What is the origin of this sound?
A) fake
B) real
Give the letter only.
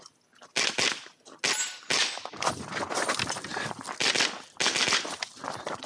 B